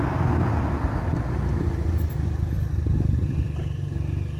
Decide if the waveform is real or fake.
real